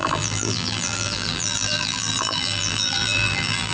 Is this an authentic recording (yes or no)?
no